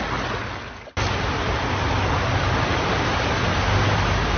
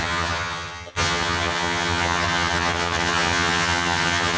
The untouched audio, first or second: first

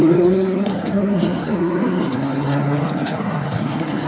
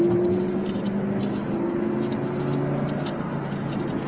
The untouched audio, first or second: second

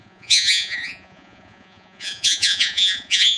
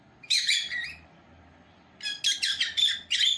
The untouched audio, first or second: second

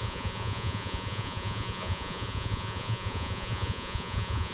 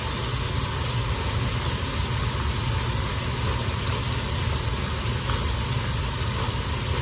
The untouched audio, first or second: second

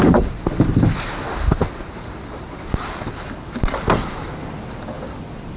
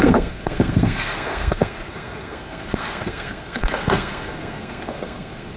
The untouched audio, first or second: first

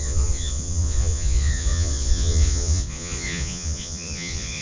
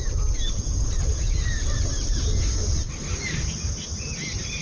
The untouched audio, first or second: second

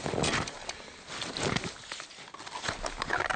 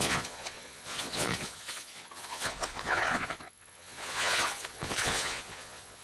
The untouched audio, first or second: first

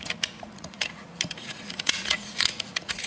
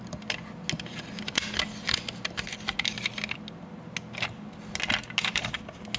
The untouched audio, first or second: second